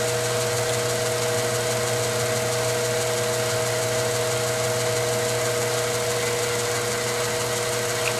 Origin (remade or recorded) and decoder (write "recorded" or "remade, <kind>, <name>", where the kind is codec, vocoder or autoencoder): recorded